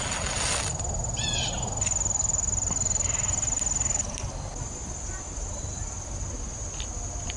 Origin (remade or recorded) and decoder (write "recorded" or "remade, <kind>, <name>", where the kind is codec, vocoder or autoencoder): recorded